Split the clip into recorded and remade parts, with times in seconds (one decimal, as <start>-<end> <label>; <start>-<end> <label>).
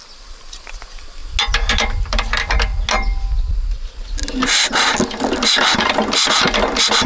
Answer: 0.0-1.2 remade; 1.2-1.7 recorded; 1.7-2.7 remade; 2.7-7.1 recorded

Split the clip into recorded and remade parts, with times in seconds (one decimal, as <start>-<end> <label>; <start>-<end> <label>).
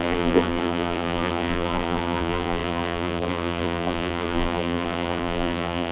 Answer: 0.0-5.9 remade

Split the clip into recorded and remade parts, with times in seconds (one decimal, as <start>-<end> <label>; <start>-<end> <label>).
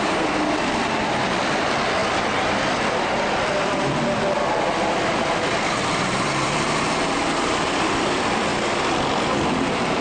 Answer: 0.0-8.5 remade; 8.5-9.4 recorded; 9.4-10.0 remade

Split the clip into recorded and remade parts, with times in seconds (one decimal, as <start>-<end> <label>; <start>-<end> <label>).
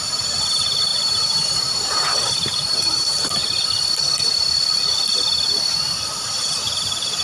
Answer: 0.0-3.4 remade; 3.4-6.5 recorded; 6.5-7.2 remade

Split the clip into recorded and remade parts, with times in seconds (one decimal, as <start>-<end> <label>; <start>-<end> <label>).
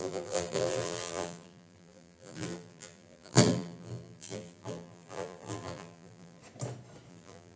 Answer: 0.0-6.4 remade; 6.4-7.1 recorded; 7.1-7.6 remade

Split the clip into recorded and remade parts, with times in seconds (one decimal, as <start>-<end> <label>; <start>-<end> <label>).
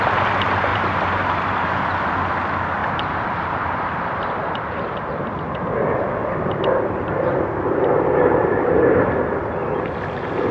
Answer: 0.0-0.7 recorded; 0.7-1.9 remade; 1.9-2.8 recorded; 2.8-5.3 remade; 5.3-6.2 recorded; 6.2-8.9 remade; 8.9-10.5 recorded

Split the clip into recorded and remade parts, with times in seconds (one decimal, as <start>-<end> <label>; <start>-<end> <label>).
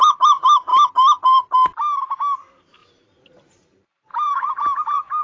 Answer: 0.0-0.7 remade; 0.7-2.0 recorded; 2.0-5.2 remade